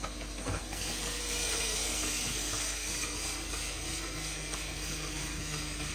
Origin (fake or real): fake